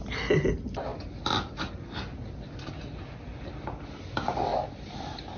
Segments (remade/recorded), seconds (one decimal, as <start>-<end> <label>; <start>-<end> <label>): 0.0-5.4 recorded